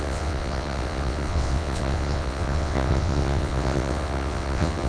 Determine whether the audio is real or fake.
fake